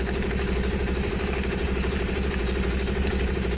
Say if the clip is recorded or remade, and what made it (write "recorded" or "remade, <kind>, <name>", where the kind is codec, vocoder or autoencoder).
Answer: remade, vocoder, BigVGAN v2